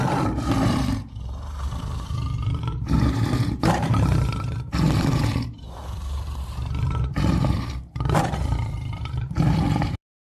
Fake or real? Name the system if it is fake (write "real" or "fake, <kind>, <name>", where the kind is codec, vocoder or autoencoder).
fake, vocoder, BigVGAN v2